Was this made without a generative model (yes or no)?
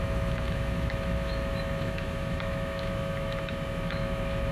no